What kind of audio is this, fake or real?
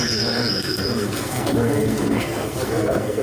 fake